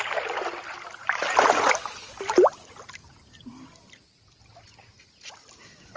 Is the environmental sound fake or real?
real